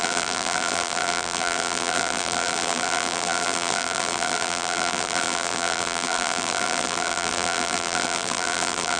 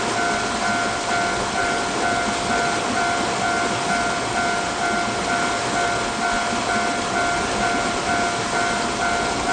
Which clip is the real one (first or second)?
second